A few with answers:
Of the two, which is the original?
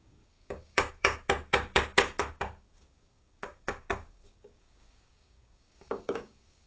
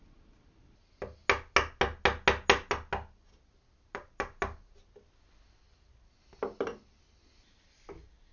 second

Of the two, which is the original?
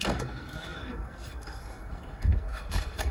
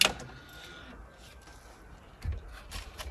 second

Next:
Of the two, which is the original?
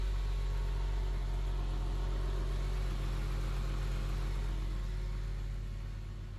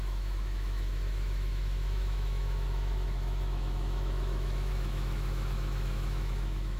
first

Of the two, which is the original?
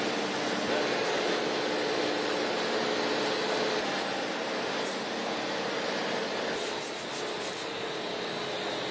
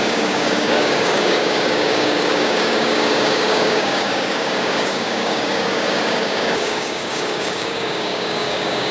first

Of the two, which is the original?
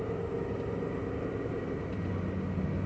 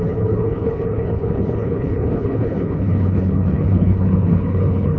first